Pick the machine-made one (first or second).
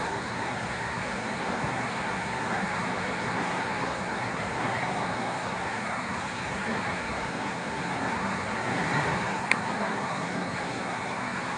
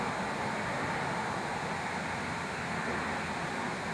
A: first